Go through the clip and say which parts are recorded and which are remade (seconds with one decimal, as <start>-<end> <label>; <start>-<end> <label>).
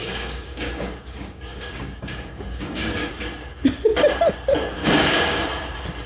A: 0.0-3.1 remade; 3.1-4.8 recorded; 4.8-5.4 remade; 5.4-6.1 recorded